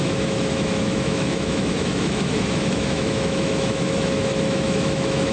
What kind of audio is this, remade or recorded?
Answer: remade